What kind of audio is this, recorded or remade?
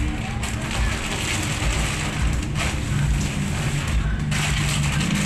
recorded